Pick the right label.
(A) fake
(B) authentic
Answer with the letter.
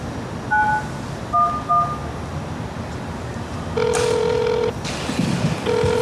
B